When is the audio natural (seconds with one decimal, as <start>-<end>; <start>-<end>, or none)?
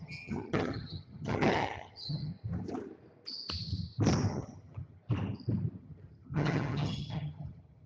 2.3-4.3; 5.0-5.8